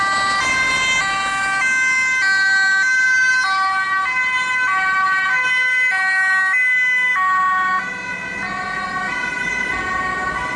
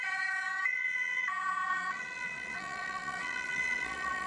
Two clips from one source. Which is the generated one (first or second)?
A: second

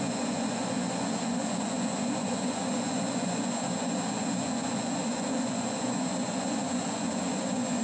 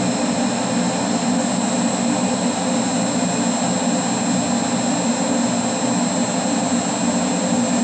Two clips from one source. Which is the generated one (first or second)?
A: first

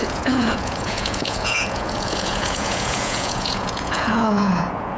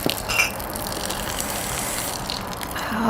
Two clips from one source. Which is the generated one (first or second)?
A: first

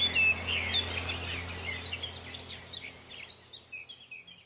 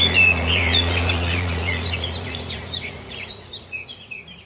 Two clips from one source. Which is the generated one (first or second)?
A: second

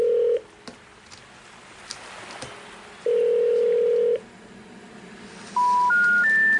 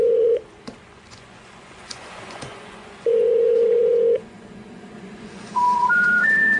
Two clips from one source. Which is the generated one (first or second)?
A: second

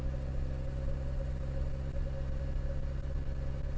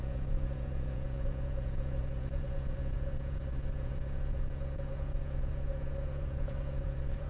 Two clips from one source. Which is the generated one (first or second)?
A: second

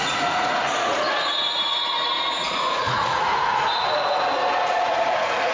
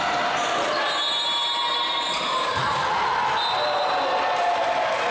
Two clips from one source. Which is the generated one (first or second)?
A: first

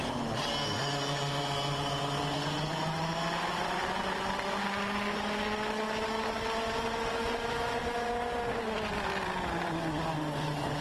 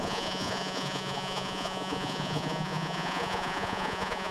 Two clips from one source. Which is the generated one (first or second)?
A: second